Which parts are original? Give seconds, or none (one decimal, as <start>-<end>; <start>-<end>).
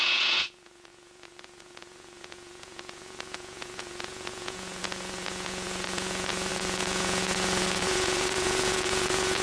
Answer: none